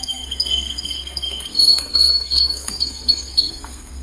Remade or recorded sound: remade